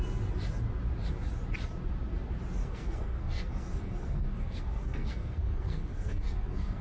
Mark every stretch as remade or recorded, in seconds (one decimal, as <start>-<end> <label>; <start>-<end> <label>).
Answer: 0.0-2.6 recorded; 2.6-6.8 remade